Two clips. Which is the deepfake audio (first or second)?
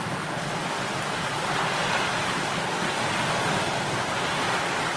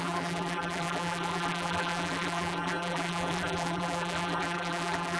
second